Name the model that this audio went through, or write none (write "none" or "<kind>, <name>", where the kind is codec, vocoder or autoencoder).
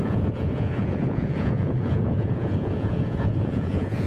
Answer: vocoder, Vocos